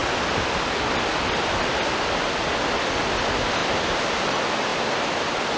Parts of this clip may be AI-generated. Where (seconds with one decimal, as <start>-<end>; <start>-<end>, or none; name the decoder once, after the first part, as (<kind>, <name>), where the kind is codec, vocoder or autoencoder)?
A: 3.6-4.3 (vocoder, BigVGAN v2); 4.7-5.6

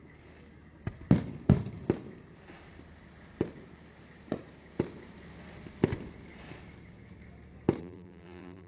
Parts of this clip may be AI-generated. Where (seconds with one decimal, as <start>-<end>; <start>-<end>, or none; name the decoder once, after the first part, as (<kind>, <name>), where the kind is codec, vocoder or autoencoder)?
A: 7.8-8.7 (vocoder, BigVGAN v2)

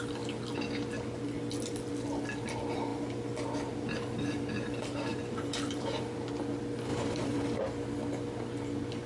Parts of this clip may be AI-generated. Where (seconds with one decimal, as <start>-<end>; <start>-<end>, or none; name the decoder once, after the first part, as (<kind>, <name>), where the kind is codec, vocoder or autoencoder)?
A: 5.1-6.0 (vocoder, BigVGAN v2); 6.9-7.6